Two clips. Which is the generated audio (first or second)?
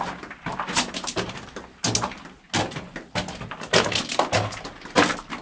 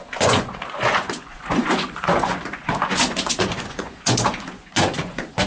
second